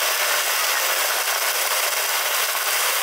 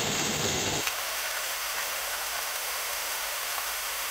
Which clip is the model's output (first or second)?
second